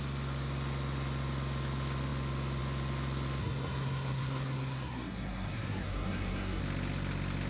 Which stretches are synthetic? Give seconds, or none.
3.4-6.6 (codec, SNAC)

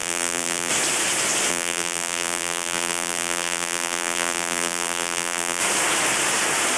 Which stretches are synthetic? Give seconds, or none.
0.0-0.7 (vocoder, BigVGAN v2); 1.5-5.6

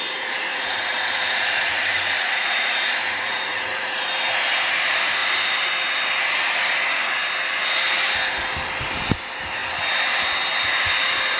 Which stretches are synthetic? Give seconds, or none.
0.5-4.1 (vocoder, Vocos)